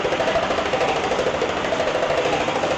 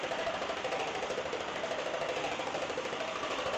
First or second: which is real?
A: first